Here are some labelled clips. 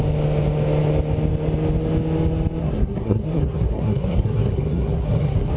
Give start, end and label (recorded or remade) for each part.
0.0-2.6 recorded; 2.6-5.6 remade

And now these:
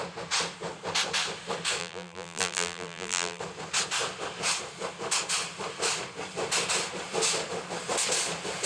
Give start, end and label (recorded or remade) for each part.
0.0-1.8 recorded; 1.8-3.4 remade; 3.4-8.7 recorded

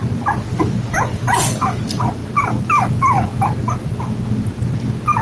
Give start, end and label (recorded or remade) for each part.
0.0-5.2 recorded

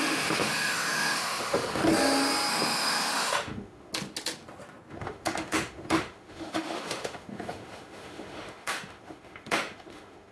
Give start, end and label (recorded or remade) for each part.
0.0-1.8 remade; 1.8-2.5 recorded; 2.5-3.9 remade; 3.9-4.9 recorded; 4.9-10.3 remade

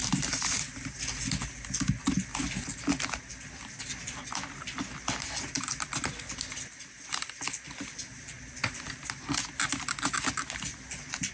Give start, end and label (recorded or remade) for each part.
0.0-11.3 recorded

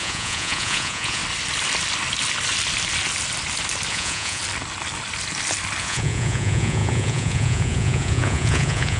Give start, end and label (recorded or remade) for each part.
0.0-1.2 remade; 1.2-3.9 recorded; 3.9-4.4 remade; 4.4-5.8 recorded; 5.8-9.0 remade

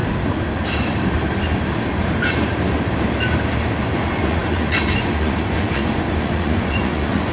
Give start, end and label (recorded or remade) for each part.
0.0-3.9 recorded; 3.9-7.3 remade

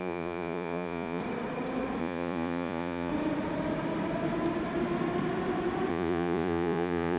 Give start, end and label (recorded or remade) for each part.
0.0-1.2 remade; 1.2-2.0 recorded; 2.0-3.1 remade; 3.1-5.9 recorded; 5.9-7.2 remade